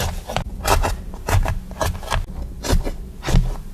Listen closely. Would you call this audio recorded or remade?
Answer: recorded